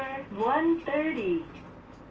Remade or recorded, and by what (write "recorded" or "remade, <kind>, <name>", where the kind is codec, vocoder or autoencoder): recorded